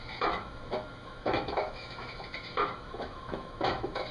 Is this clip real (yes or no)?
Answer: no